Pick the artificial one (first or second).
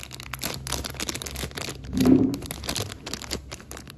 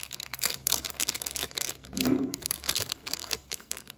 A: second